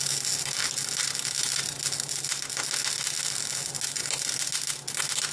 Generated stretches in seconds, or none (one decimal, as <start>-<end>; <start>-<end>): none